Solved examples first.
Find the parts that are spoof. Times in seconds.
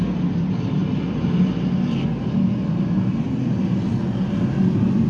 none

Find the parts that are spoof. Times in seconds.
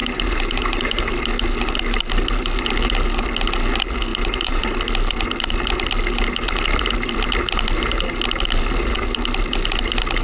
0.0-1.1 (vocoder, BigVGAN v2); 4.1-4.8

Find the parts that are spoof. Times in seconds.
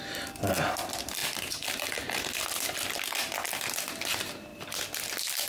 none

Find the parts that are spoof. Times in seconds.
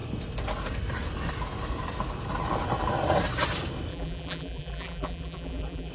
3.9-5.9 (vocoder, BigVGAN v2)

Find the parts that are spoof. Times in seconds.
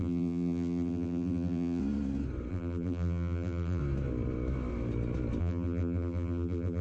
0.0-1.8 (vocoder, BigVGAN v2); 2.5-3.8; 5.4-6.8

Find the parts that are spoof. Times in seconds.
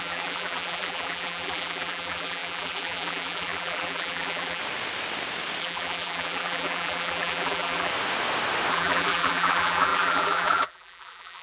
0.0-4.6 (vocoder, BigVGAN v2); 5.6-7.9; 8.7-11.4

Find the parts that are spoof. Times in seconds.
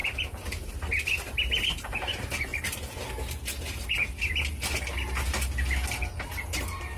0.0-0.7 (vocoder, BigVGAN v2); 2.5-3.1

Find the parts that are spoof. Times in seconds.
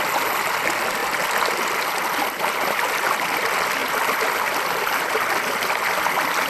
3.8-4.9 (vocoder, BigVGAN v2)